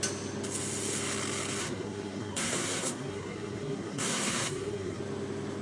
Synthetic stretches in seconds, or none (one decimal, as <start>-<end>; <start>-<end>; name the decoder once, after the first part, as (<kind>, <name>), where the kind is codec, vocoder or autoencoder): 1.6-5.0 (codec, SNAC)